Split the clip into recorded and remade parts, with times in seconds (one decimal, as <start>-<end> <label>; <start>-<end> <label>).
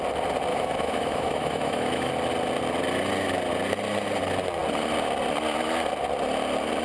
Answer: 0.0-0.5 recorded; 0.5-2.1 remade; 2.1-6.8 recorded